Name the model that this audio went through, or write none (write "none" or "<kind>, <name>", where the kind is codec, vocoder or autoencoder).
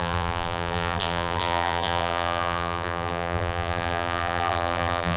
vocoder, BigVGAN v2